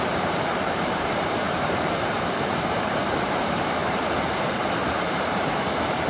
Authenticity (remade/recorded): remade